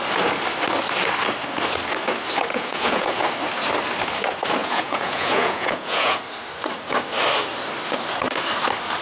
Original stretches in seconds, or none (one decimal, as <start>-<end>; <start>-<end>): 0.0-2.5; 3.2-4.6; 6.2-9.0